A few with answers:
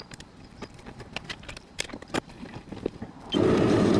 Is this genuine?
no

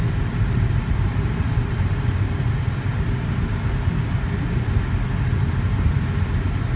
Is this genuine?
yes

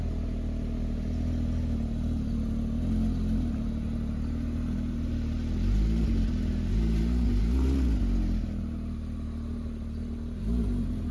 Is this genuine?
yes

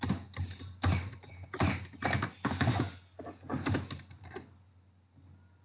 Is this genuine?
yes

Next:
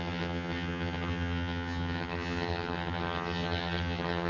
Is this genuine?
no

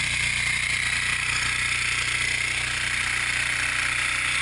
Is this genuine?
yes